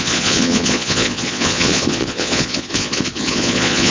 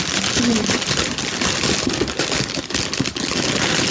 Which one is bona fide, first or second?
second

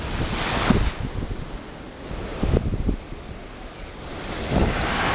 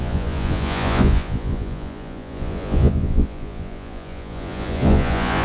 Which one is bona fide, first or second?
first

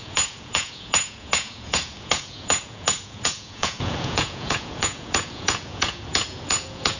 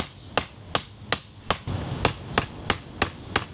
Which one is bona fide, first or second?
second